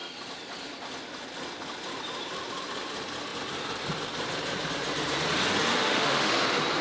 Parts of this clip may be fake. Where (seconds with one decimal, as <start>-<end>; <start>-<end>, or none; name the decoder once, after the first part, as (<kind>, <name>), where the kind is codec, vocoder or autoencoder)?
5.7-6.3 (autoencoder, DAC-VAE)